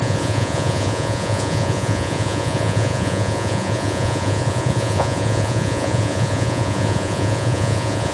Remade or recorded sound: remade